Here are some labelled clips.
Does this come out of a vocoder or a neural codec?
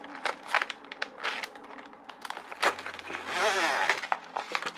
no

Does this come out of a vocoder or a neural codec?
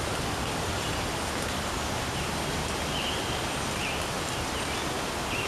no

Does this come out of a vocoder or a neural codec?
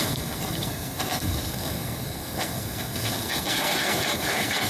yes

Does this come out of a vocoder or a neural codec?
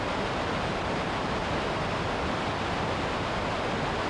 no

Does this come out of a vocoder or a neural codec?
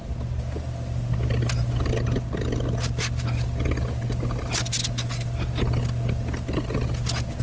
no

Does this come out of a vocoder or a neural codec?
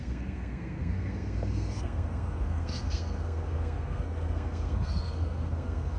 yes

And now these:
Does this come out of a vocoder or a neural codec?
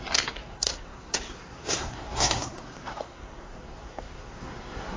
yes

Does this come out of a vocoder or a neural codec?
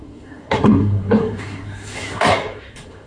yes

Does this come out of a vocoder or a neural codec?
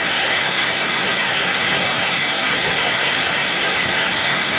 yes